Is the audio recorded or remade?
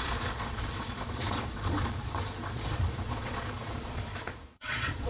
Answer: remade